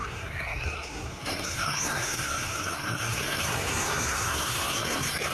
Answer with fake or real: fake